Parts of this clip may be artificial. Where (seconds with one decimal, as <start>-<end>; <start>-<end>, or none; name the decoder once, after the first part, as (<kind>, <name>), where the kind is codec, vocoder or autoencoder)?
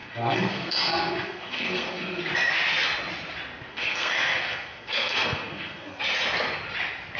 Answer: 0.0-2.2 (codec, SNAC); 3.7-6.0